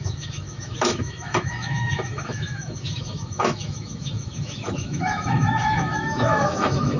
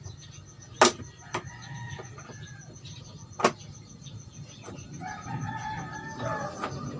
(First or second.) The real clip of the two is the second